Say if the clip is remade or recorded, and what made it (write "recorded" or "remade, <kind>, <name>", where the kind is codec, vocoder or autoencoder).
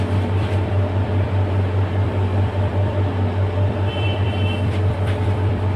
remade, vocoder, BigVGAN v2